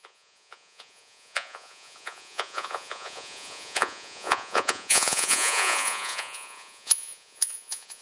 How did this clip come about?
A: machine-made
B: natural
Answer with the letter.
A